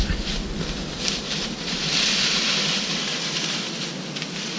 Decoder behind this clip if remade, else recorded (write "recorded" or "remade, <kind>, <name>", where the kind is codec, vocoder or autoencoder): recorded